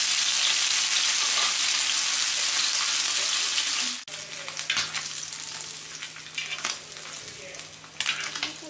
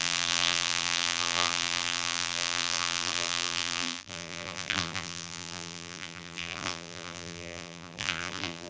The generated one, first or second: second